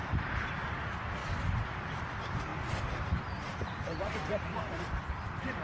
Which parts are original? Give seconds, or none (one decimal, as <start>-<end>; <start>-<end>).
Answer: 1.2-2.0

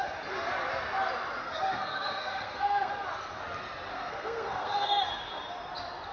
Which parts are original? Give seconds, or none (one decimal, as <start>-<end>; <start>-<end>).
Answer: 0.0-1.4; 2.9-3.9; 5.3-6.1

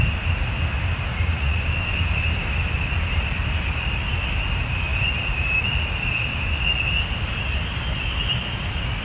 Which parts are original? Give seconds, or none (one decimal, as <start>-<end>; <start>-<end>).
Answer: 0.0-1.1; 1.6-9.0

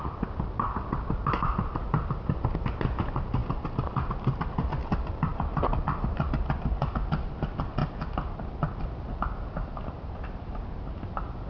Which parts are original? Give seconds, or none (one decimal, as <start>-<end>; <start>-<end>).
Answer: 0.0-11.5